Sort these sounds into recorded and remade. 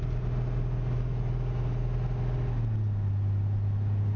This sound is recorded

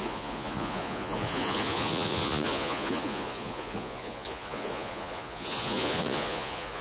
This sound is remade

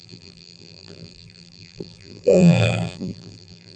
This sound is remade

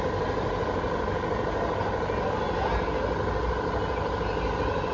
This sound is recorded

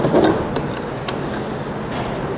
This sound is recorded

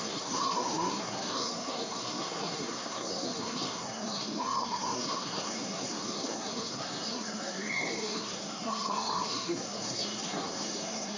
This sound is remade